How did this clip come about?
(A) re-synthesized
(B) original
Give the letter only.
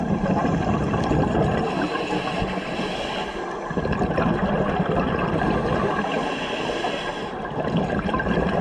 B